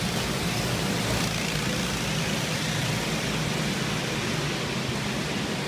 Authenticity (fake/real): real